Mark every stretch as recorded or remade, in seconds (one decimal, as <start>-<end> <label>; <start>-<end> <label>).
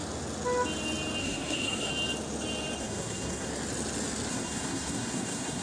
0.0-1.2 recorded; 1.2-1.9 remade; 1.9-2.8 recorded; 2.8-3.5 remade; 3.5-4.3 recorded; 4.3-5.6 remade